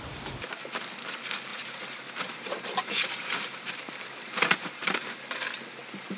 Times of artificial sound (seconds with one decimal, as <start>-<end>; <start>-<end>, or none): 1.5-5.2